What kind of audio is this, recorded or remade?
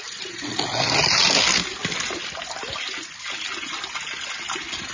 recorded